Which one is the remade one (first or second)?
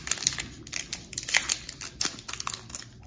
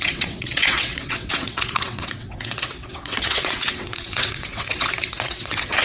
second